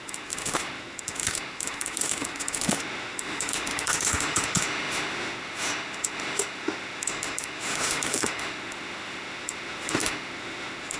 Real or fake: fake